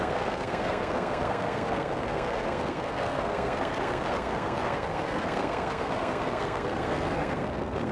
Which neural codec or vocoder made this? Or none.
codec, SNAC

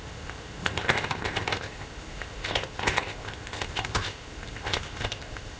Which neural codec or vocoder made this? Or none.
codec, ZipCodec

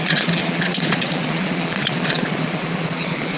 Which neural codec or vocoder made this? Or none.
vocoder, Vocos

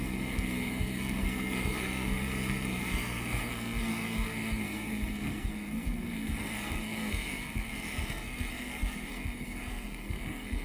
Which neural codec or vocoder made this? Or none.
codec, SNAC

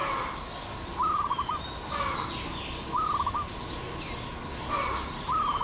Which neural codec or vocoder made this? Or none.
none